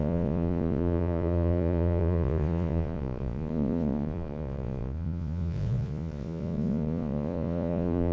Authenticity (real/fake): fake